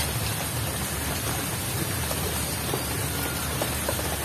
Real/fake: real